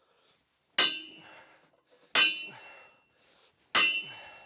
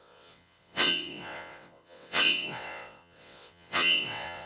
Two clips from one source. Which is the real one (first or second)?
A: first